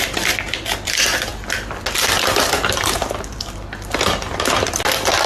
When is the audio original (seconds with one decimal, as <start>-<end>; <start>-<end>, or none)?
0.0-5.3